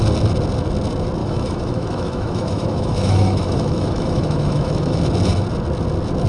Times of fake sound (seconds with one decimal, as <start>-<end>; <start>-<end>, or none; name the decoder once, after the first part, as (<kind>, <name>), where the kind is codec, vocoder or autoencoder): 1.2-5.0 (autoencoder, DAC-VAE)